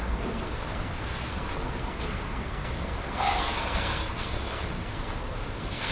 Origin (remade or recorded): remade